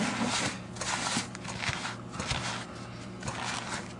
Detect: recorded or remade recorded